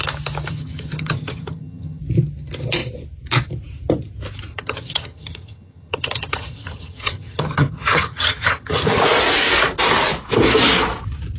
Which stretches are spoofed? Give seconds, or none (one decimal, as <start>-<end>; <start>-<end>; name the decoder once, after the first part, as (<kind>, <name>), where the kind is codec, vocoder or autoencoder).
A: 0.5-2.0 (vocoder, HiFi-GAN); 4.5-9.0